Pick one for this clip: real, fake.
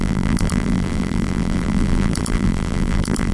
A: fake